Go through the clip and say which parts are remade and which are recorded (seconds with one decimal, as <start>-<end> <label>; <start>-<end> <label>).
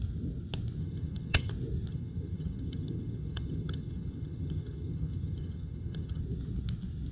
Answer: 0.0-0.8 recorded; 0.8-1.5 remade; 1.5-1.9 recorded; 1.9-6.2 remade; 6.2-7.1 recorded